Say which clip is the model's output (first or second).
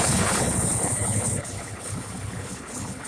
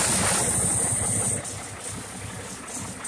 first